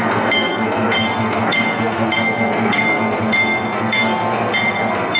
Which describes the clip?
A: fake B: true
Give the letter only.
A